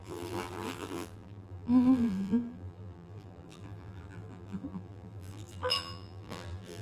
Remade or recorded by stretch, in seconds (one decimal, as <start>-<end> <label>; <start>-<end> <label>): 0.0-6.8 remade